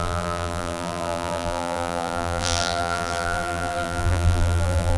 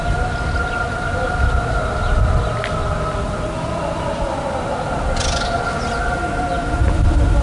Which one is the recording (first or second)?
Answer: second